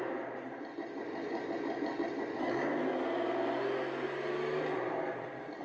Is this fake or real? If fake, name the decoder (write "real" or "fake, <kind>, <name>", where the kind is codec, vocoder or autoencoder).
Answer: real